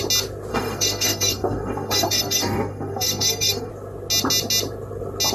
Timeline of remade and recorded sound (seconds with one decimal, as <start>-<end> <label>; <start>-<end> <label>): 0.0-0.5 recorded; 0.5-3.7 remade; 3.7-5.3 recorded